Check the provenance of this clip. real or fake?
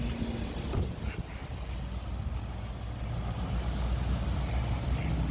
real